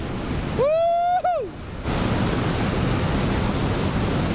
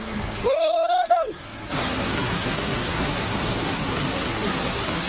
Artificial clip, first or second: second